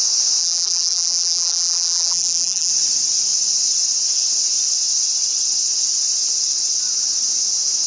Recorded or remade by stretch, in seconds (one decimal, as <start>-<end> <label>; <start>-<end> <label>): 0.0-0.4 recorded; 0.4-2.7 remade; 2.7-7.9 recorded